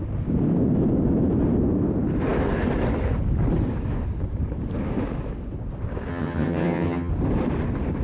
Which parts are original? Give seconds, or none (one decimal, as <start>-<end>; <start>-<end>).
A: 0.0-6.1; 7.1-8.0